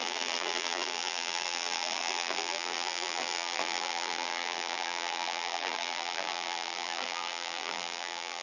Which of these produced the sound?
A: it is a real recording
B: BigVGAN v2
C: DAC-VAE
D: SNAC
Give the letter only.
B